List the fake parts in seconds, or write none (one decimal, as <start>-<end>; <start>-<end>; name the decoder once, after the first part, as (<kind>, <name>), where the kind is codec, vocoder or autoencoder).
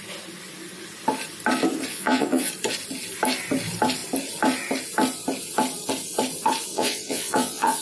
1.9-2.5 (vocoder, Vocos); 6.7-7.8